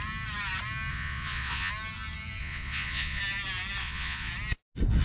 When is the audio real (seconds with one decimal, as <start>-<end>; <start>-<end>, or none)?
0.0-0.9; 1.7-2.4; 3.2-3.8; 4.3-5.0

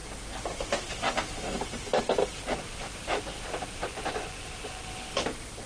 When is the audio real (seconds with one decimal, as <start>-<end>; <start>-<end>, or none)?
0.0-3.9; 4.8-5.7